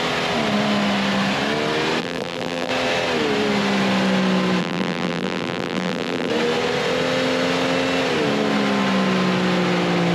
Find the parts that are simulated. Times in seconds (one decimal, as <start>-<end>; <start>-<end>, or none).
2.0-2.7; 4.6-6.3